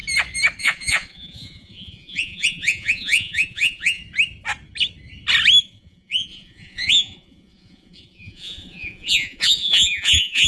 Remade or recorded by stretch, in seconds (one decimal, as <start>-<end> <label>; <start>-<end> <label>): 0.0-0.6 recorded; 0.6-4.0 remade; 4.0-5.6 recorded; 5.6-10.5 remade